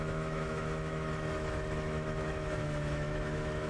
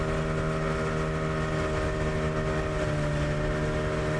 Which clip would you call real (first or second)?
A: second